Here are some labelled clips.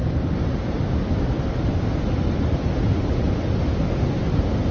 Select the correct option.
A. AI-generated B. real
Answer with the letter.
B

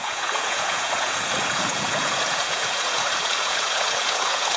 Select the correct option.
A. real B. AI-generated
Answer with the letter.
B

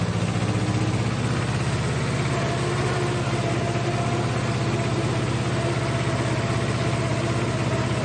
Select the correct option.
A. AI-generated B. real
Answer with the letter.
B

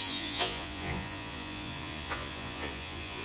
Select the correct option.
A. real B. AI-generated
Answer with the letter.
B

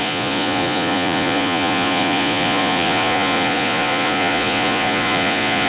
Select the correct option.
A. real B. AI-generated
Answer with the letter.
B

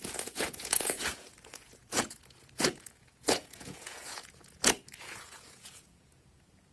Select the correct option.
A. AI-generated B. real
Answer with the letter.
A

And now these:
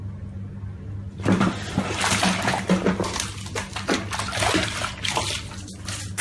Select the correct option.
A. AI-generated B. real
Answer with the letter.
B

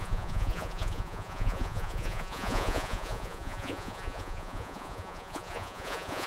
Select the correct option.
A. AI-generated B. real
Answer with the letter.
A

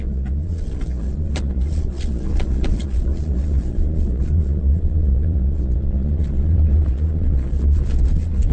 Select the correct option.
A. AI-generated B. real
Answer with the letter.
A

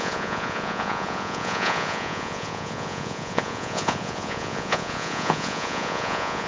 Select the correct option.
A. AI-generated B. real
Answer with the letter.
A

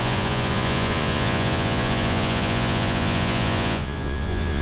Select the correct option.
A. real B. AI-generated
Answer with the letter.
B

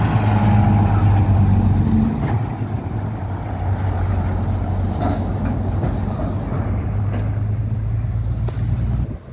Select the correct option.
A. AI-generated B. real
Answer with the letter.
B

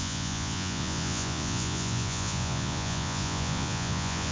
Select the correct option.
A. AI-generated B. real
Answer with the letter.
A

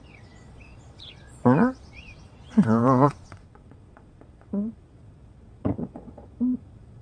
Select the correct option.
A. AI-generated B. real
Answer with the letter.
A